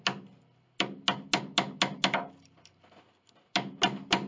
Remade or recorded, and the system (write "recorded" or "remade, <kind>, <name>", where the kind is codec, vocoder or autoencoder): recorded